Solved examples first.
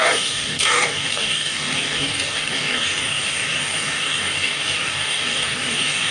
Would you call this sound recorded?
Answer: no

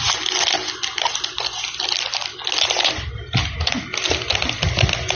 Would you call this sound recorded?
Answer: yes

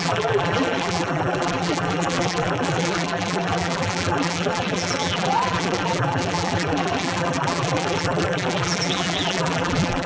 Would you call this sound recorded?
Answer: no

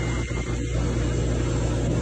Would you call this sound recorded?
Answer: yes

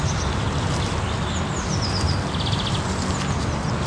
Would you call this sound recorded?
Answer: yes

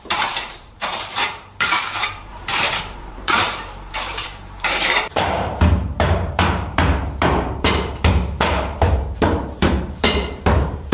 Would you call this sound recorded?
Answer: no